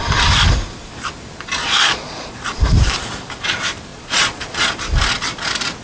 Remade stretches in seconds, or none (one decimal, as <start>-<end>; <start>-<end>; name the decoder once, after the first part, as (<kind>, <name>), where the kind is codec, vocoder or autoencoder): 1.6-2.4 (vocoder, Vocos); 3.9-4.7